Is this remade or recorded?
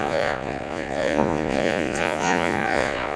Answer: remade